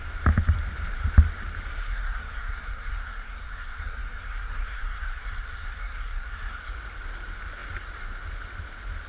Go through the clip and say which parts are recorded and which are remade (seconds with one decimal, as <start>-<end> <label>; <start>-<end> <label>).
0.0-1.8 recorded; 1.8-6.7 remade; 6.7-9.1 recorded